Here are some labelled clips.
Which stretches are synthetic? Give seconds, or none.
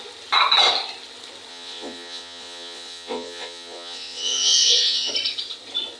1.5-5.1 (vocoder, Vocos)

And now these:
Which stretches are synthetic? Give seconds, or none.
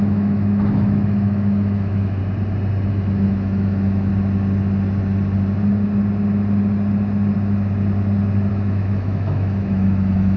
0.0-2.2 (autoencoder, DAC-VAE); 2.9-4.1; 8.5-10.4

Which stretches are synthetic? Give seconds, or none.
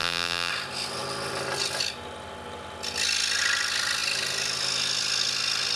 0.0-0.5 (vocoder, BigVGAN v2)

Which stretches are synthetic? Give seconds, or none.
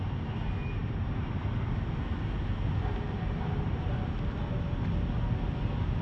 none